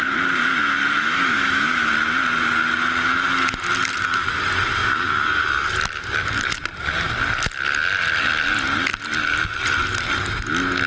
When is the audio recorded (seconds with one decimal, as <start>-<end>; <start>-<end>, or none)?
0.0-1.0; 1.9-10.9